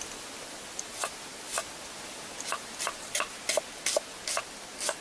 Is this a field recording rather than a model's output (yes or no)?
yes